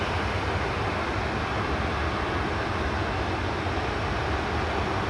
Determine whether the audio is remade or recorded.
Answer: recorded